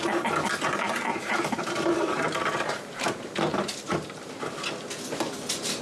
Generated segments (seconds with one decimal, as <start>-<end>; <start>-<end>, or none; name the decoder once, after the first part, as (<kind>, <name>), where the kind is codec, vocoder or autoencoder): 1.1-4.6 (vocoder, BigVGAN v2)